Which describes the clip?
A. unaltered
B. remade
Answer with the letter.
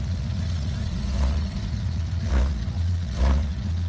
B